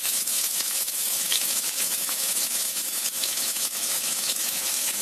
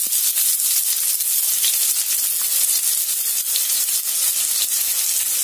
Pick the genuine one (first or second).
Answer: second